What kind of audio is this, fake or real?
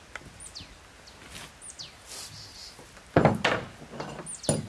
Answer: real